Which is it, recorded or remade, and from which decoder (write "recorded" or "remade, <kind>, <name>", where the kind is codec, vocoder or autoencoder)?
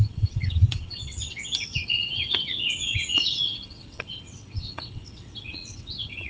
remade, vocoder, WaveNeXt